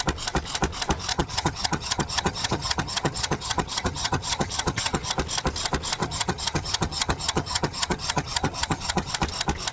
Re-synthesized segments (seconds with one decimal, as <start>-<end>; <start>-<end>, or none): 1.1-5.1; 6.0-9.1